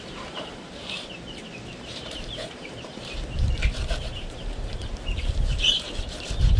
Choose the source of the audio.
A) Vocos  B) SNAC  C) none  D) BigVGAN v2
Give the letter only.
D